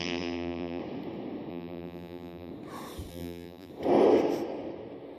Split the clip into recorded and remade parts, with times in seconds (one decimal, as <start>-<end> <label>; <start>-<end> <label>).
0.0-0.8 remade; 0.8-1.5 recorded; 1.5-2.5 remade; 2.5-3.1 recorded; 3.1-3.7 remade; 3.7-5.2 recorded